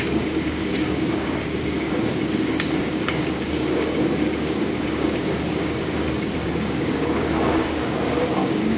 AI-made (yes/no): yes